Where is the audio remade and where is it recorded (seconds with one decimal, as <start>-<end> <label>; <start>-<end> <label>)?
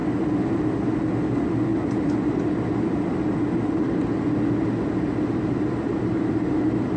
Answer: 0.0-7.0 recorded